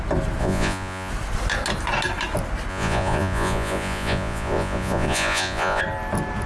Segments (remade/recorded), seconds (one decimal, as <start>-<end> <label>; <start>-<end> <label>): 0.0-0.4 recorded; 0.4-1.1 remade; 1.1-2.7 recorded; 2.7-5.8 remade; 5.8-6.5 recorded

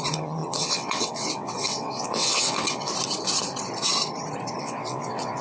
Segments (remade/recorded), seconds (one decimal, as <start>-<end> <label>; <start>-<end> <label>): 0.0-2.9 remade; 2.9-4.6 recorded; 4.6-5.4 remade

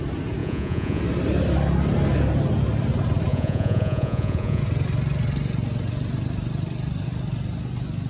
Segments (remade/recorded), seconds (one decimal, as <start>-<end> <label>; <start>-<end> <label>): 0.0-0.4 recorded; 0.4-1.0 remade; 1.0-3.3 recorded; 3.3-4.6 remade; 4.6-8.1 recorded

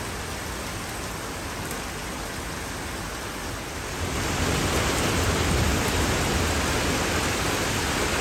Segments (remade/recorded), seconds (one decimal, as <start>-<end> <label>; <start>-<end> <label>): 0.0-8.2 recorded

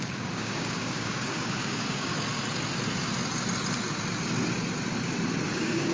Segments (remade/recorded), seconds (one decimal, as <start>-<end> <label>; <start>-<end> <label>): 0.0-2.1 remade; 2.1-5.5 recorded; 5.5-5.9 remade

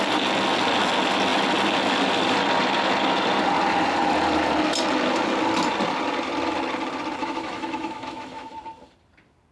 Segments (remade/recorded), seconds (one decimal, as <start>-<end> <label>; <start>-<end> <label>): 0.0-7.2 recorded; 7.2-8.5 remade; 8.5-9.5 recorded